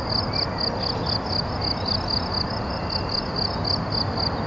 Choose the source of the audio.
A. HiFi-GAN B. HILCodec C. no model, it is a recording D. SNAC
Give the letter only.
C